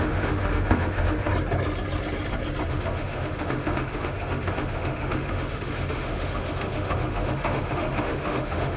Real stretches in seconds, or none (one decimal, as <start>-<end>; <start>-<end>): 1.3-2.7